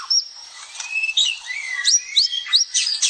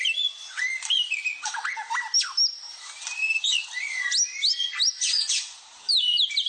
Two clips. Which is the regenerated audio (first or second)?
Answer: first